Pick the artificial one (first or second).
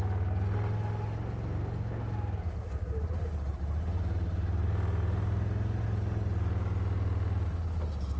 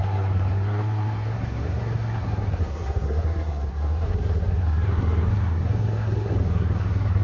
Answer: second